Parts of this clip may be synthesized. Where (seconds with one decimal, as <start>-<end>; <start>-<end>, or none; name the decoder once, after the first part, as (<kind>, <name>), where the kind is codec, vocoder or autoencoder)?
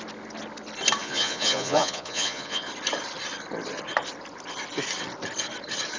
1.0-2.7 (vocoder, Vocos)